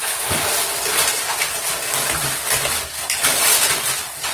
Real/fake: real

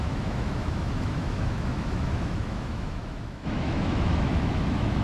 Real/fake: fake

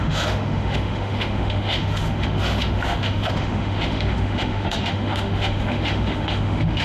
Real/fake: fake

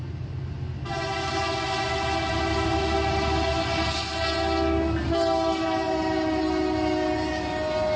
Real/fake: real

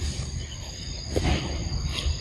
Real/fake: real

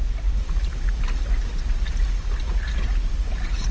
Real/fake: real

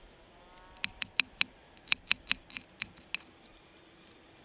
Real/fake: real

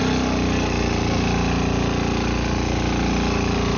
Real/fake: real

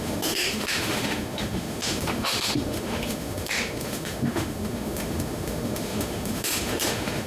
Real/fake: fake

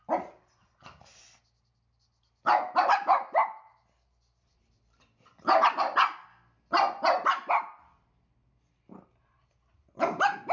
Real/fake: real